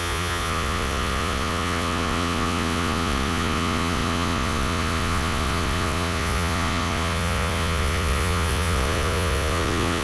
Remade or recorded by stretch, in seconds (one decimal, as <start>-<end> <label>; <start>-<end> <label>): 0.0-10.0 remade